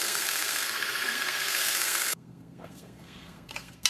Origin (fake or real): fake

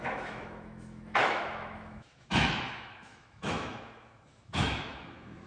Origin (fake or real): fake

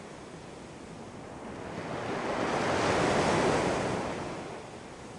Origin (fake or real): real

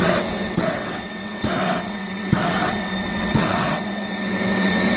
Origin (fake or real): fake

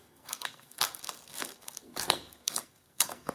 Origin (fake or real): fake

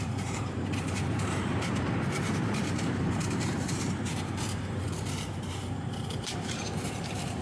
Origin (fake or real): fake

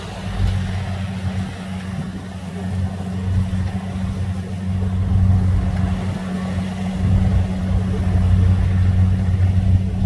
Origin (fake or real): real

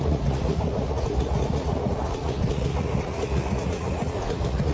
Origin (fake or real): fake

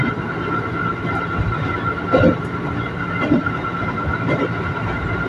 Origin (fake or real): real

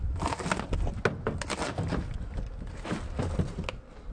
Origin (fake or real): real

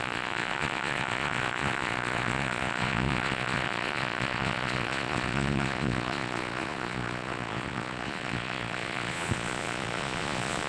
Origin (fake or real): fake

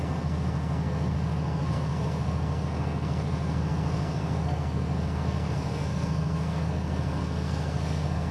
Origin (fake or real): fake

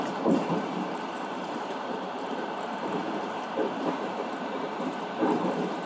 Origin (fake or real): fake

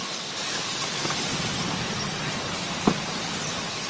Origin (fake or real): real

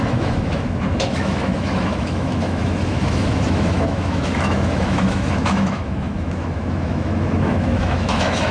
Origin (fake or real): fake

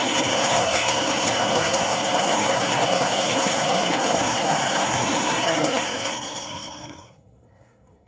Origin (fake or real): fake